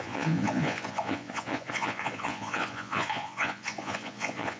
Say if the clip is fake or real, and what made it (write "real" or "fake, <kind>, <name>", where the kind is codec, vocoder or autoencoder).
fake, vocoder, Vocos